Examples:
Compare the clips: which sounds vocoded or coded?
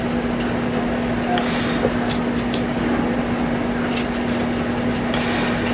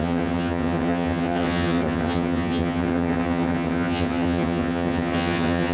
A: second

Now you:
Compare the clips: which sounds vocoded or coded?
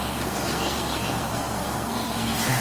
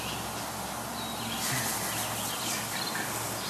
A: first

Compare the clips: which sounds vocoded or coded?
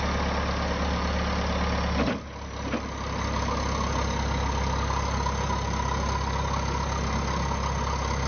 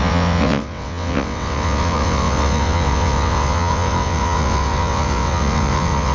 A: second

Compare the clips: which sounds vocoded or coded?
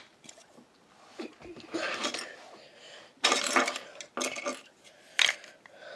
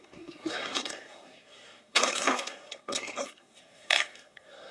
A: second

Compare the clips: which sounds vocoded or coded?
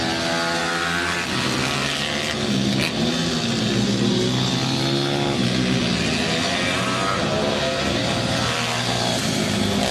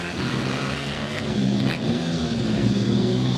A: second